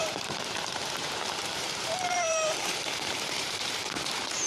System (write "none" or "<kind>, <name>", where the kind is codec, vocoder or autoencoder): vocoder, BigVGAN v2